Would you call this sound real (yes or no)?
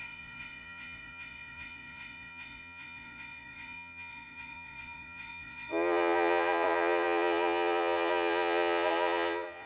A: no